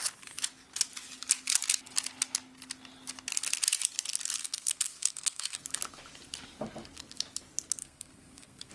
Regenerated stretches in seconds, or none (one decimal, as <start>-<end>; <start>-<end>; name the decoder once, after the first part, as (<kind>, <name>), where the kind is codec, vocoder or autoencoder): 4.4-5.6 (codec, SNAC); 7.8-8.7